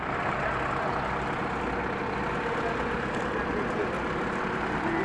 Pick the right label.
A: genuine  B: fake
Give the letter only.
A